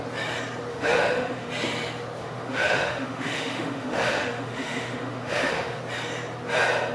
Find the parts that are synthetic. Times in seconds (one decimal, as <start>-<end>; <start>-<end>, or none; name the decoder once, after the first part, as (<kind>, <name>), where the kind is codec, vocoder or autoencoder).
0.7-1.5 (autoencoder, DAC-VAE); 2.2-5.8